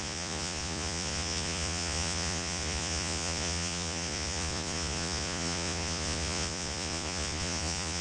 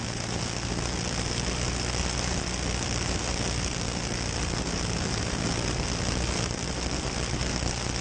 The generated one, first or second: first